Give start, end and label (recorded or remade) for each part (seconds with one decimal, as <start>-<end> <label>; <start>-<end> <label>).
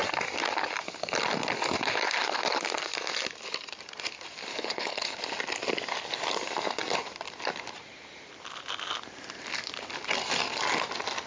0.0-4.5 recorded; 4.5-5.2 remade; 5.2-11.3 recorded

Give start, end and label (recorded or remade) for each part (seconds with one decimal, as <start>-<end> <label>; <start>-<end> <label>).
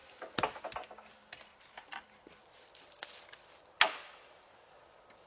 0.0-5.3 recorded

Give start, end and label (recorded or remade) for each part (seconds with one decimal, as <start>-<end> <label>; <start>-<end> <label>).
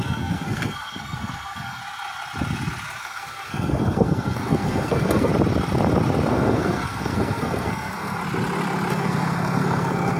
0.0-1.8 remade; 1.8-3.0 recorded; 3.0-5.3 remade; 5.3-6.3 recorded; 6.3-8.2 remade; 8.2-8.9 recorded; 8.9-10.2 remade